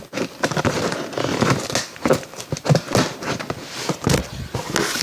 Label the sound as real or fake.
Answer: real